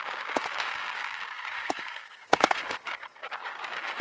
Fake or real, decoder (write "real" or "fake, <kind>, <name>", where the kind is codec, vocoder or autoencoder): fake, codec, DAC